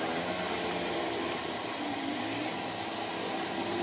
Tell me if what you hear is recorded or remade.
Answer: recorded